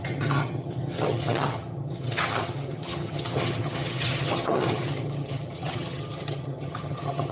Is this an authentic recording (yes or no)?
no